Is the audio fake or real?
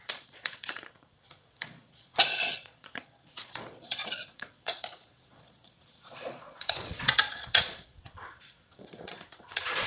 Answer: fake